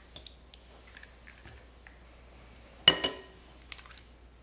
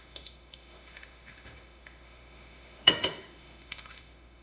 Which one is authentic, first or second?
first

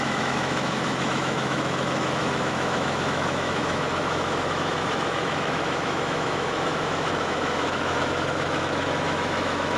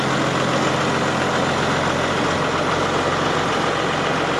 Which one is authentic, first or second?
second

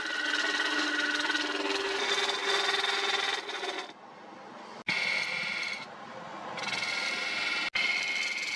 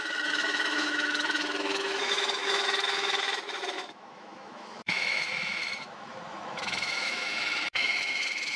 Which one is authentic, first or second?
first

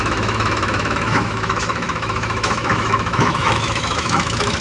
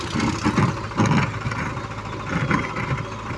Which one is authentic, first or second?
second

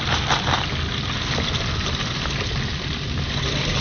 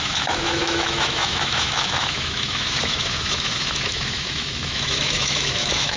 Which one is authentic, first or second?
first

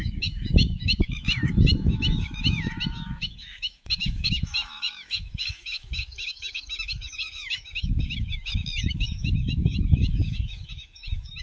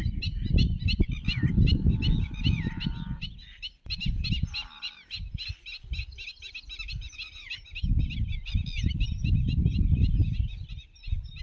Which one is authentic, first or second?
second